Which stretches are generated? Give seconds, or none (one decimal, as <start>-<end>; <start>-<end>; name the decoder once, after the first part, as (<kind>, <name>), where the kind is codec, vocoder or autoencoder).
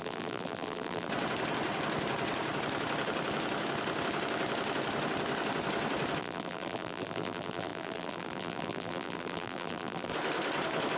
0.0-1.1 (vocoder, BigVGAN v2); 6.2-10.1